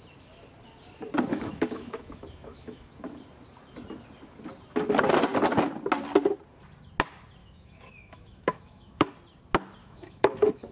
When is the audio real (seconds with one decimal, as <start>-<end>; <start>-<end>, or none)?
0.0-1.3; 2.9-7.4; 9.1-9.8